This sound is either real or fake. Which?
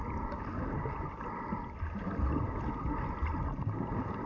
real